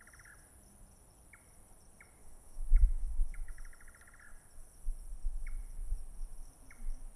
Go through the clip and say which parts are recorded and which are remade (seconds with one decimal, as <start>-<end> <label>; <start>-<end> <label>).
0.0-2.2 recorded; 2.2-3.6 remade; 3.6-7.2 recorded